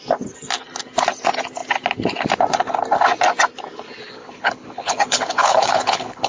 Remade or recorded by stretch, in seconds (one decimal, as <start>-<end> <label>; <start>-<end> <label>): 0.0-4.2 recorded; 4.2-6.3 remade